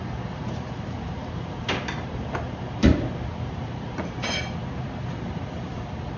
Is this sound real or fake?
fake